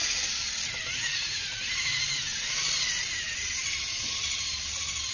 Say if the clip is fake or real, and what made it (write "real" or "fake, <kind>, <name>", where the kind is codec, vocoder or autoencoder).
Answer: real